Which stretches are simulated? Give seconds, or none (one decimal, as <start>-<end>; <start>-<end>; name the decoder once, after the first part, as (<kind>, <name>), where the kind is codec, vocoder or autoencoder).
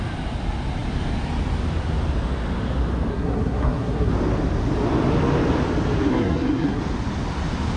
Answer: 3.1-4.1 (codec, SNAC); 6.1-6.8